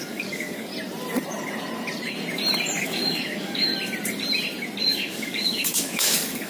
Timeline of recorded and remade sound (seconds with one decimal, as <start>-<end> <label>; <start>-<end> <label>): 0.0-0.7 remade; 0.7-2.8 recorded; 2.8-3.7 remade; 3.7-4.8 recorded; 4.8-6.5 remade